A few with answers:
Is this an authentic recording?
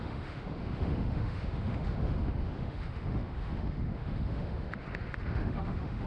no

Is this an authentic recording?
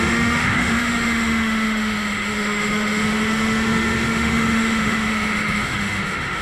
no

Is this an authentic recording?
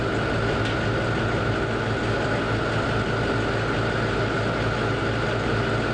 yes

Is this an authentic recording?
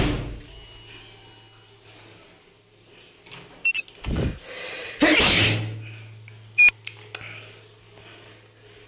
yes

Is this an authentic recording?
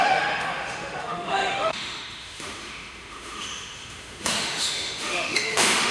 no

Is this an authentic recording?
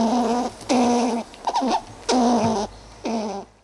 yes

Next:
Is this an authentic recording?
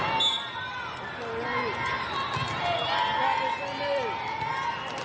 yes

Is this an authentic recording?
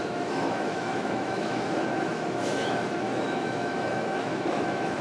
no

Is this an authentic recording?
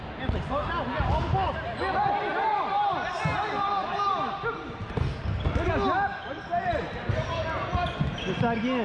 yes